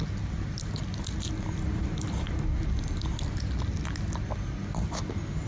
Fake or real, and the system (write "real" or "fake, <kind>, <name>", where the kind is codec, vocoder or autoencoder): real